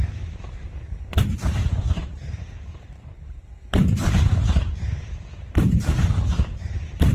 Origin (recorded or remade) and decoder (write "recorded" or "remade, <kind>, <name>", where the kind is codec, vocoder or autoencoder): remade, vocoder, BigVGAN v2